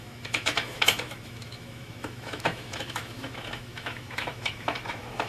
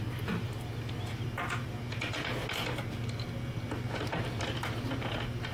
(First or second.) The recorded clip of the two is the second